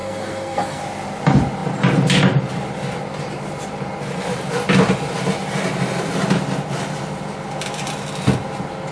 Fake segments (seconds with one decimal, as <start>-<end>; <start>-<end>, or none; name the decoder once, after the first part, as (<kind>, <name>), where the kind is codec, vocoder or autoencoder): 0.0-0.8 (codec, SNAC)